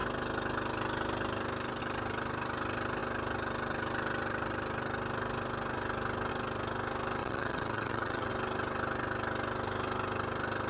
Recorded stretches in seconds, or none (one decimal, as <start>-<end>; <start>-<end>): 0.0-7.2; 8.3-10.7